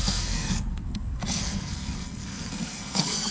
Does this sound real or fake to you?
fake